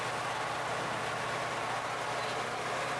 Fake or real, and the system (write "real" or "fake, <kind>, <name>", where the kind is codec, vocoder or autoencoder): real